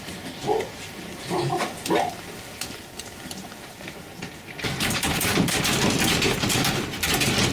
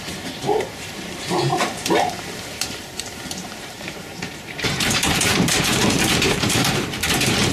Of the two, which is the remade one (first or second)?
second